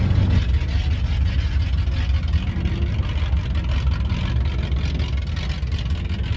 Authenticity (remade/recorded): recorded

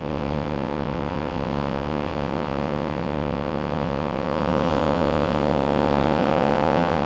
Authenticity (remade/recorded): remade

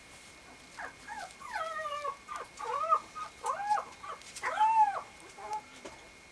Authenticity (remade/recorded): recorded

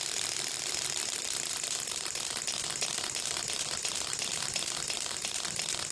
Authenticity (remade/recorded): remade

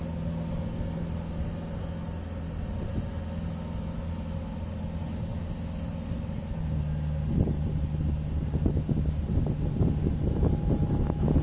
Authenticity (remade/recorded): recorded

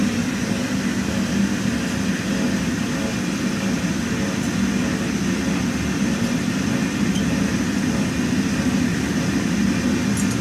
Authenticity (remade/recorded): recorded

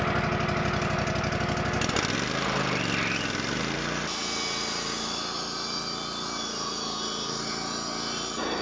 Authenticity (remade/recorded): recorded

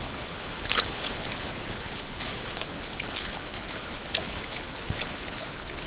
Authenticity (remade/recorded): remade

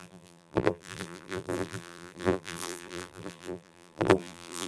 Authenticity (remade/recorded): remade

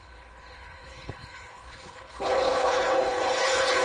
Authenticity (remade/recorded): remade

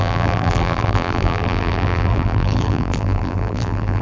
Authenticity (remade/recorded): remade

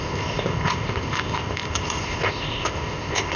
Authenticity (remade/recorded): remade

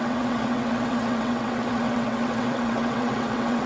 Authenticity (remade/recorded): remade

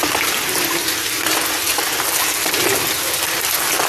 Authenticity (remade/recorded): recorded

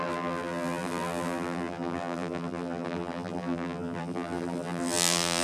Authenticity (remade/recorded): remade